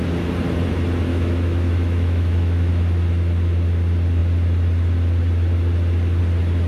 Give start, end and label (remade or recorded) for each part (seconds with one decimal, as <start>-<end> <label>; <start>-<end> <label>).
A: 0.0-1.1 recorded; 1.1-2.7 remade; 2.7-6.7 recorded